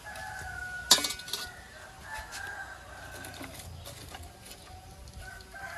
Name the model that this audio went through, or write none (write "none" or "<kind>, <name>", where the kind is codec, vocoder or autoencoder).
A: none